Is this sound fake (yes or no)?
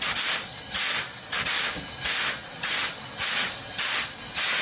no